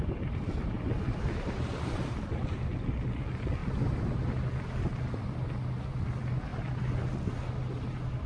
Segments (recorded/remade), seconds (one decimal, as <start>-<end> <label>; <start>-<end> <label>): 0.0-8.3 recorded